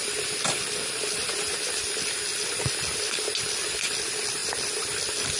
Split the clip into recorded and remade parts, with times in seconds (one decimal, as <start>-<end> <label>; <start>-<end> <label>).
0.0-5.4 remade